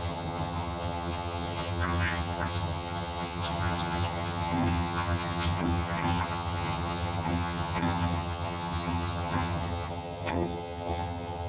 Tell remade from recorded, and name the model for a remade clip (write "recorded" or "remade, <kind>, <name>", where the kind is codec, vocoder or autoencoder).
remade, vocoder, HiFi-GAN